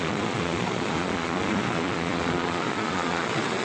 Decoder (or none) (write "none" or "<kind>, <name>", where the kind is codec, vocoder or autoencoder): vocoder, Vocos